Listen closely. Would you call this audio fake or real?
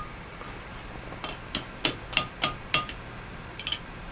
real